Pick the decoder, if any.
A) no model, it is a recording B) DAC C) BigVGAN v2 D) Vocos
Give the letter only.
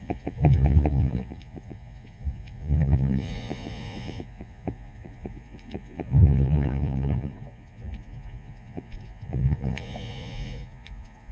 D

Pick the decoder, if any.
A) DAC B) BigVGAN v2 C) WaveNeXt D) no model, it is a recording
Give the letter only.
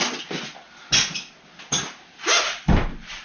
D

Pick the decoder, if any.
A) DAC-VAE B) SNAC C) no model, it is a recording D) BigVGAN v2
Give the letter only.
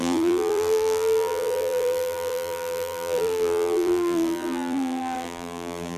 D